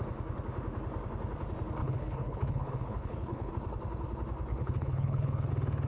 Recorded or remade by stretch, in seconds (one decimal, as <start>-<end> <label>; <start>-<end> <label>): 0.0-1.8 recorded; 1.8-3.5 remade; 3.5-4.5 recorded; 4.5-5.5 remade; 5.5-5.9 recorded